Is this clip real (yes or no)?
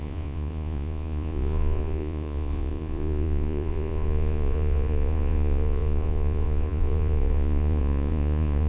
no